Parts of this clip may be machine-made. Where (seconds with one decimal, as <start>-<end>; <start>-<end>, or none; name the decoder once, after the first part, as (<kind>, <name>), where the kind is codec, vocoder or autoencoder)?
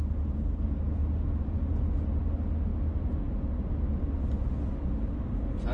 1.0-1.6 (vocoder, BigVGAN v2)